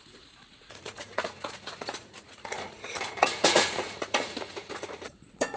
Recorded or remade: remade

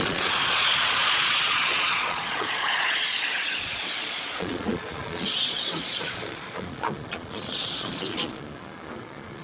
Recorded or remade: remade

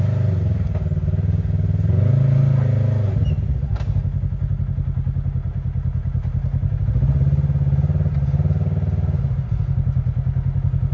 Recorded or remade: recorded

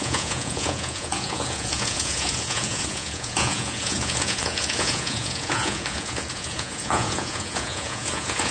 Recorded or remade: remade